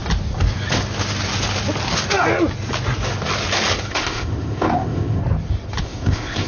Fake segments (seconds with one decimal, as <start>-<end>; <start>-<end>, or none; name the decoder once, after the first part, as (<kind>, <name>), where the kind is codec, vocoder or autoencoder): 3.9-5.2 (codec, ZipCodec); 5.8-6.5